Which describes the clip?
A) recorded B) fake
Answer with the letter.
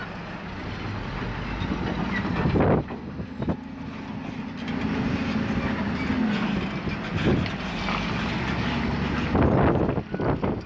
A